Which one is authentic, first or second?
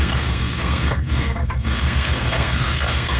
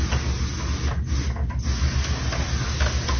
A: second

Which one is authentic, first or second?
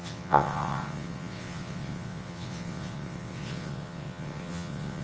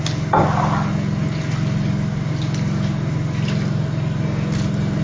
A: second